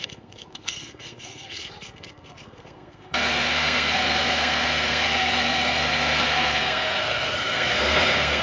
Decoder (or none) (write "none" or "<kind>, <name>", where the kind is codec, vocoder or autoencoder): codec, SNAC